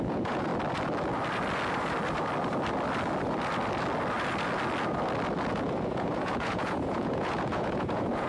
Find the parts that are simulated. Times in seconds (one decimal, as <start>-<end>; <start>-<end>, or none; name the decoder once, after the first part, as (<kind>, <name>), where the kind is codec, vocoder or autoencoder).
0.0-0.5 (vocoder, Vocos); 5.5-8.3

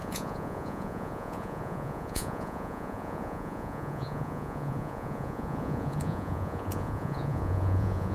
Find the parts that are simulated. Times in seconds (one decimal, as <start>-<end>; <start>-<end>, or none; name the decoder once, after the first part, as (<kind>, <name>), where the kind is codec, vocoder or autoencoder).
0.0-8.1 (vocoder, Vocos)

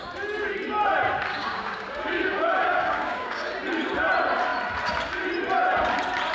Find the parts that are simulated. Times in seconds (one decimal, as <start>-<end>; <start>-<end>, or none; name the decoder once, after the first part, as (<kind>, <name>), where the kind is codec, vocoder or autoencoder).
1.3-3.5 (codec, DAC)

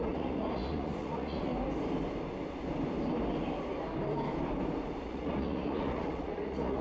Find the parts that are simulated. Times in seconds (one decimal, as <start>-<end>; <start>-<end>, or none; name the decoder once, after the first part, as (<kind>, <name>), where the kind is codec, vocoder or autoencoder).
0.0-1.5 (vocoder, Vocos); 5.0-6.8